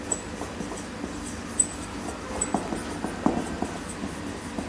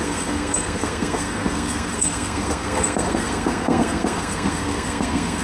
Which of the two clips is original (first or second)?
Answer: first